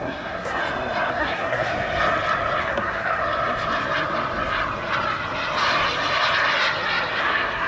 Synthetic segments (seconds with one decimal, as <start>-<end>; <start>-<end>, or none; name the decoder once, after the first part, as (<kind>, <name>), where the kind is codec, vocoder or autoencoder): 0.0-0.6 (codec, SNAC); 1.1-1.7; 2.6-3.2; 7.2-7.7